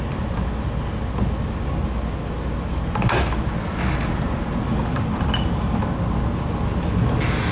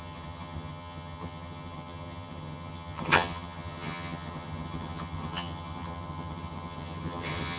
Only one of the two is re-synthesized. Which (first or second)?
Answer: second